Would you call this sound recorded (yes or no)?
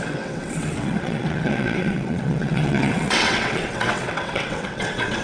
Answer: no